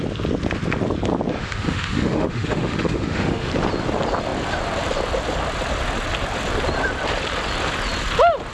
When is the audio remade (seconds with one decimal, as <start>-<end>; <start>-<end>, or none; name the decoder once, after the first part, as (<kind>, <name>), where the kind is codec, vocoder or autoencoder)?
1.4-3.5 (autoencoder, DAC-VAE)